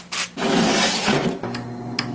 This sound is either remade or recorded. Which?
recorded